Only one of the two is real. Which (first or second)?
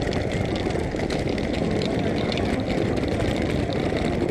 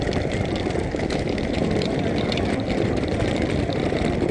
first